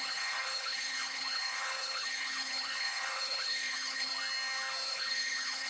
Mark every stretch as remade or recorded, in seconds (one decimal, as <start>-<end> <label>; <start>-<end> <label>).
0.0-4.1 remade; 4.1-4.9 recorded; 4.9-5.7 remade